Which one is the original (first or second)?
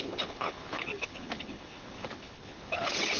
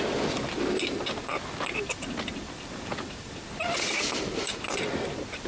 second